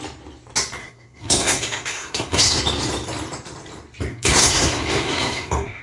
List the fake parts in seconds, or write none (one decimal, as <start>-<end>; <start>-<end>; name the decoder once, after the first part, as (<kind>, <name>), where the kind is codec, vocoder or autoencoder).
0.8-2.6 (codec, SNAC); 4.1-5.8